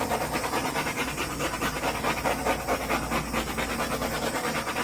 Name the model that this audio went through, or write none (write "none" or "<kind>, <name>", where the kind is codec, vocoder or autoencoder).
none